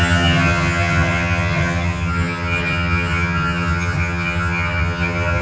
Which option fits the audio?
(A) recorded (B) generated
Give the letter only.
B